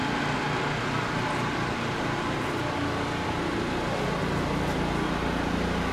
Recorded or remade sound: recorded